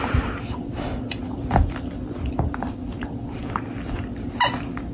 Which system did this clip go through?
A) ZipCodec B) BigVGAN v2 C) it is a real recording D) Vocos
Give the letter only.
C